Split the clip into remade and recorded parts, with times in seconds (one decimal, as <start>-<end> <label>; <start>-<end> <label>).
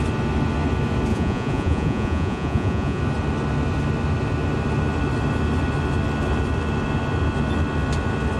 0.0-1.1 recorded; 1.1-3.0 remade; 3.0-8.4 recorded